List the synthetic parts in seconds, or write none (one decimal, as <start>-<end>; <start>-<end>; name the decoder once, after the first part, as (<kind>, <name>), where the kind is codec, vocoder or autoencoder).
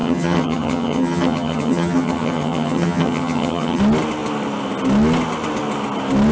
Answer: 0.0-3.8 (vocoder, HiFi-GAN)